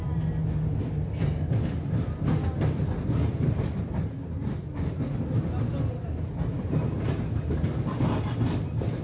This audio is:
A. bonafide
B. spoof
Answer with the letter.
A